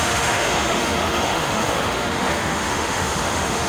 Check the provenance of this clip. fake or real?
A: fake